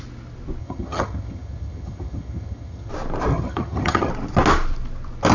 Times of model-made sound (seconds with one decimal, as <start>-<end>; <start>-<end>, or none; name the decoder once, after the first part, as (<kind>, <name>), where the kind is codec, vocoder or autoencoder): 0.6-2.9 (vocoder, HiFi-GAN); 3.3-4.1